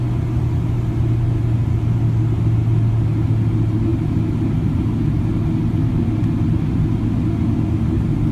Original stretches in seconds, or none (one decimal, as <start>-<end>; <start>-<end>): 0.0-8.3